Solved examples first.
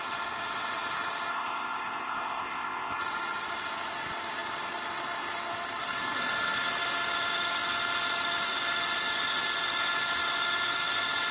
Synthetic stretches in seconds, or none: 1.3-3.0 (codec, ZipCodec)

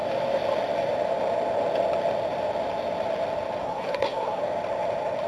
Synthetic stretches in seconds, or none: 3.6-4.4 (codec, SNAC)

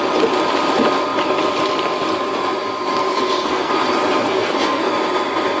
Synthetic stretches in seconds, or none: 3.0-3.7 (codec, SNAC); 4.2-4.9

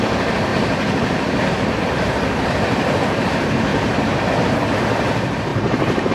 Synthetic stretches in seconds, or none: 0.5-3.3 (vocoder, BigVGAN v2); 3.7-4.8; 5.5-6.1